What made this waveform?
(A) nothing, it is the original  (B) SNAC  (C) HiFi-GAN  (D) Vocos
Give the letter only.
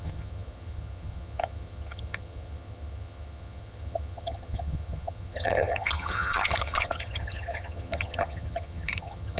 C